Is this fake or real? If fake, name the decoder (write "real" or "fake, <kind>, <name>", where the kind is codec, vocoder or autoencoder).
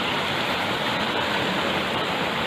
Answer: real